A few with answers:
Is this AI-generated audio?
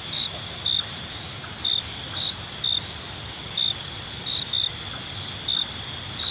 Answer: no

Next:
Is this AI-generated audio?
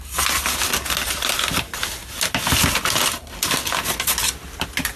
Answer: no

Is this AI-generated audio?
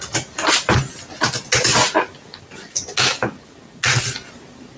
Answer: no